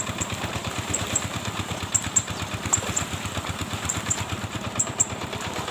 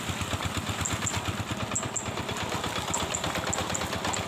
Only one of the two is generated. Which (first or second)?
first